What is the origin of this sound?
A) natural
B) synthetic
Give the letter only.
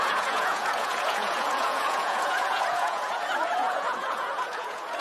B